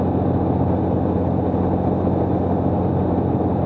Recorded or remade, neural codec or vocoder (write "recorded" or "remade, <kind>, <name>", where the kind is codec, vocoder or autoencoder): recorded